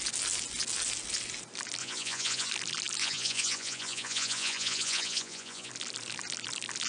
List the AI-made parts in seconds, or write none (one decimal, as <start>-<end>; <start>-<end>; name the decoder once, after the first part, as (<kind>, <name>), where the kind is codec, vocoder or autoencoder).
1.8-2.5 (vocoder, Vocos); 3.0-5.7